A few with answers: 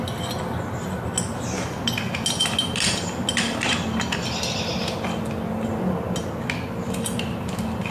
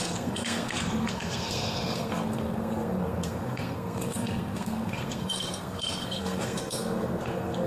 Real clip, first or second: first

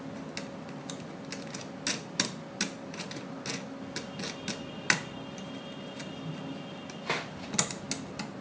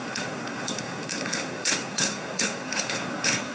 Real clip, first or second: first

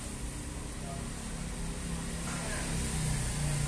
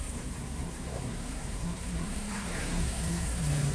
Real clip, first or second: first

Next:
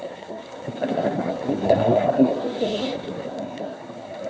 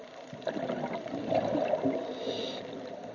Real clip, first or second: second